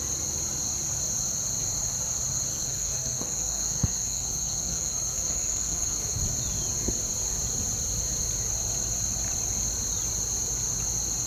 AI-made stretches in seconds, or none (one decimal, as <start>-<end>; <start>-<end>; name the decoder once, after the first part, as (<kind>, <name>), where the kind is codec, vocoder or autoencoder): 2.5-6.2 (codec, SNAC)